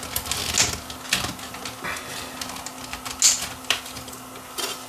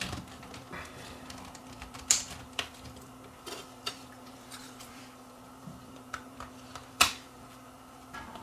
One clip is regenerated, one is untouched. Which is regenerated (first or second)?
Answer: second